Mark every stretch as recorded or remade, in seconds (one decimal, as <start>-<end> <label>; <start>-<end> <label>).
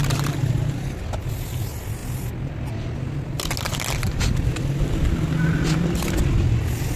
0.0-7.0 recorded